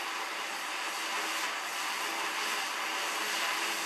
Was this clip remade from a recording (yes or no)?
no